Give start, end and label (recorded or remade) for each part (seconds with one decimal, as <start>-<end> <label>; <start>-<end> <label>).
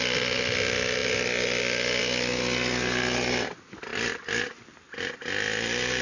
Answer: 0.0-6.0 recorded